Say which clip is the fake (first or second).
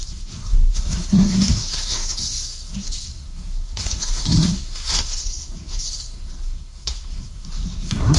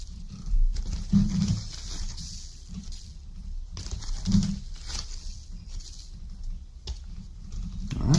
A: first